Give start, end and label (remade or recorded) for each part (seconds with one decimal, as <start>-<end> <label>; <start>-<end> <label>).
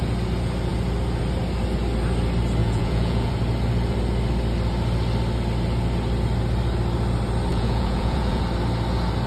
0.0-2.6 recorded; 2.6-3.3 remade; 3.3-7.5 recorded; 7.5-8.4 remade; 8.4-9.3 recorded